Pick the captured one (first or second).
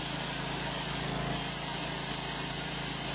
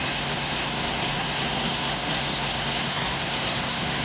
first